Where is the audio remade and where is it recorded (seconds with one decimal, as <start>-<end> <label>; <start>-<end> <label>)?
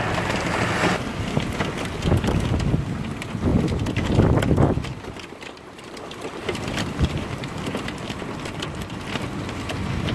0.0-3.5 recorded; 3.5-8.6 remade; 8.6-10.1 recorded